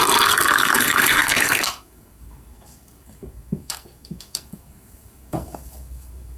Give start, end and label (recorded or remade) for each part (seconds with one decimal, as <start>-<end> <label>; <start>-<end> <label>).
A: 0.0-6.4 remade